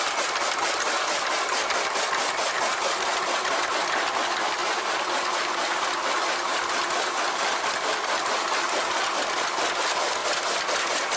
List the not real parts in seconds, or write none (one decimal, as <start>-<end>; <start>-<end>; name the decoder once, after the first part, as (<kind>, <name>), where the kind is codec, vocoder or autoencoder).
none